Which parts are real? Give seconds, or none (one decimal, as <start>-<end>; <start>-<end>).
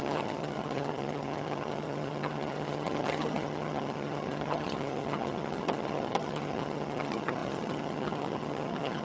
none